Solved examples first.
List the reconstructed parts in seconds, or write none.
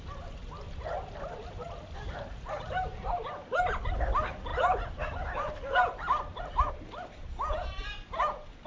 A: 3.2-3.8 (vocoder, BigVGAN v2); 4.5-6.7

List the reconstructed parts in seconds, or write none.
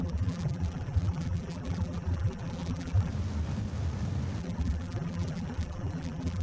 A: 0.0-3.1 (vocoder, BigVGAN v2); 4.4-6.4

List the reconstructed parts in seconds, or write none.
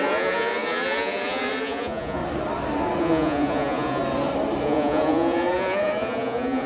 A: 0.0-2.2 (vocoder, Vocos); 3.0-4.0; 4.6-6.7